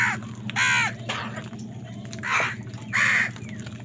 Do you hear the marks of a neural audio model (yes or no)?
no